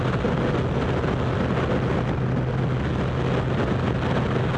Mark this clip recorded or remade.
recorded